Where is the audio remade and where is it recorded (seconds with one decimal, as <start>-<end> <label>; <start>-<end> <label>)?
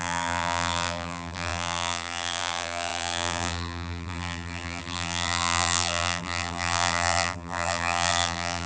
0.0-8.7 remade